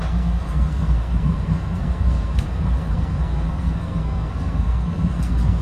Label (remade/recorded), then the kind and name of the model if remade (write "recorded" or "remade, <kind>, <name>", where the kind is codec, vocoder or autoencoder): remade, codec, SNAC